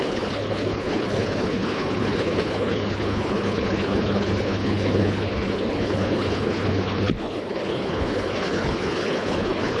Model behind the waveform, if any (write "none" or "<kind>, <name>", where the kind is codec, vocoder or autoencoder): codec, HILCodec